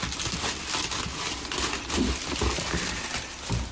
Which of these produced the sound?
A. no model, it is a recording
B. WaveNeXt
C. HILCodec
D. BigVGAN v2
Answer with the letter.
A